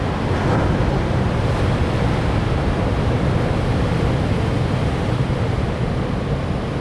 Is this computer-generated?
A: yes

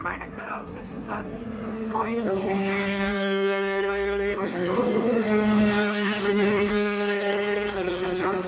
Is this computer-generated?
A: yes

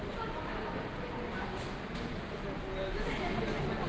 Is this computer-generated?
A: no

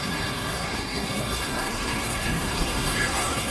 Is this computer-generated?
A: yes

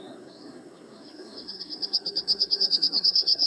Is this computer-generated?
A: yes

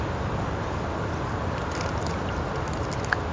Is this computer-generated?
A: no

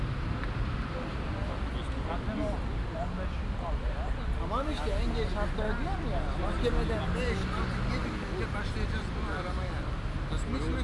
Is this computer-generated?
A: no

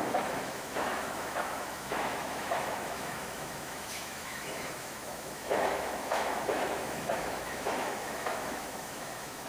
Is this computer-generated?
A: yes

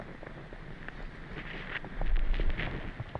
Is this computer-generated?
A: no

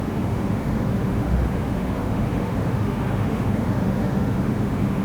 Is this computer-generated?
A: yes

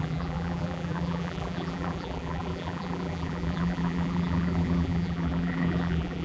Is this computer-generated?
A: yes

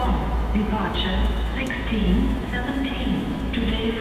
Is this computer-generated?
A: yes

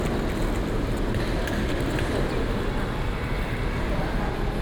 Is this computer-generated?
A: no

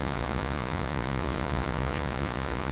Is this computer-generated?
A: yes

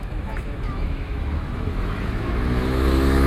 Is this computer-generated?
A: yes